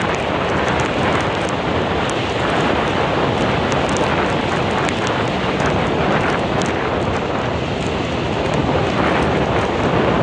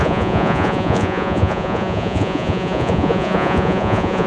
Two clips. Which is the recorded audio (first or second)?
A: first